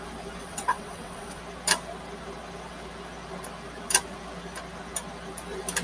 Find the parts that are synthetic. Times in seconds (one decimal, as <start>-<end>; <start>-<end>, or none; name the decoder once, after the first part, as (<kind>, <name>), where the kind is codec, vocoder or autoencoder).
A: 0.4-1.4 (vocoder, WaveNeXt)